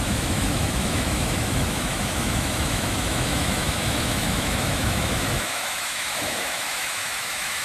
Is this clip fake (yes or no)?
yes